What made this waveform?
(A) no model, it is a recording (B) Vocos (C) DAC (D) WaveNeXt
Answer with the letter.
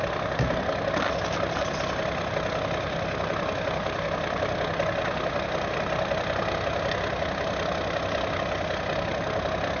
A